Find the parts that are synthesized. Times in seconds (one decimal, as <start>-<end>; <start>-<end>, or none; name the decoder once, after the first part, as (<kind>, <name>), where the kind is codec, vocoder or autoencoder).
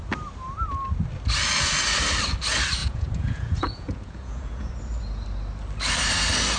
2.8-4.7 (vocoder, Vocos)